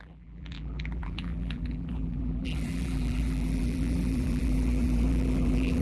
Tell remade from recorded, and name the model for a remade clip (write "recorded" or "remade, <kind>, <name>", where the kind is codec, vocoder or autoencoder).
remade, vocoder, BigVGAN v2